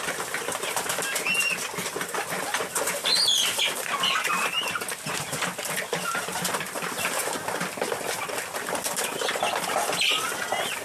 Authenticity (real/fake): real